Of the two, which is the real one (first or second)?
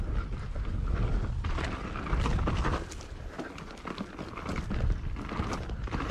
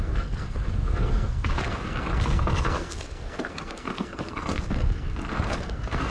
first